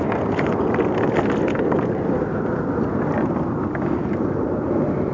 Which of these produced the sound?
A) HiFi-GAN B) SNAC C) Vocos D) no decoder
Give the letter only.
D